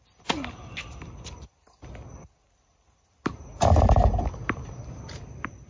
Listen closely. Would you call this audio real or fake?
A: real